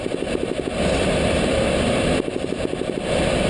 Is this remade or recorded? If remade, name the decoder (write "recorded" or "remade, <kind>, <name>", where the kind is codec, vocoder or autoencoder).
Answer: recorded